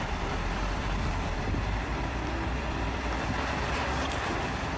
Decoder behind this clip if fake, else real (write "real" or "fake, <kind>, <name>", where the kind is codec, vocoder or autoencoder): fake, vocoder, BigVGAN v2